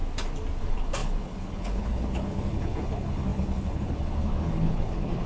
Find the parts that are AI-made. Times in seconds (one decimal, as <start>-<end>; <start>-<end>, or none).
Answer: 0.6-5.3